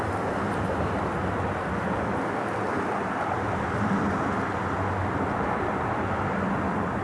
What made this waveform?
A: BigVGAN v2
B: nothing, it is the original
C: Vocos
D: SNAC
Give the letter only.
B